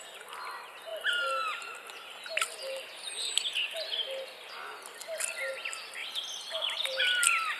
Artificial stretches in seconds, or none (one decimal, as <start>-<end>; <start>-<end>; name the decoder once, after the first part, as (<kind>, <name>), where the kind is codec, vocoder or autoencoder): 6.0-7.6 (vocoder, BigVGAN v2)